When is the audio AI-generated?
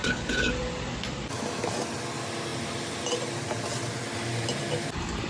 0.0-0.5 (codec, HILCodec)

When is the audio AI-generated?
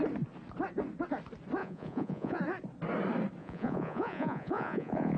1.6-2.4 (vocoder, Vocos); 3.4-5.2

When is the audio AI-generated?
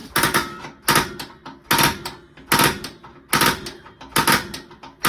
none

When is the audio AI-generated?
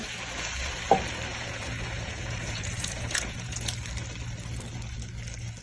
1.3-3.7 (vocoder, Vocos)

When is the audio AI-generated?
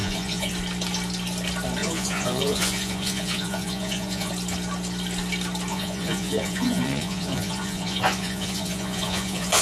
0.0-0.5 (vocoder, Vocos); 1.8-4.3; 5.7-9.6